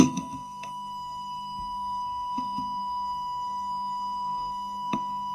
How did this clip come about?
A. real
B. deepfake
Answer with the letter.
B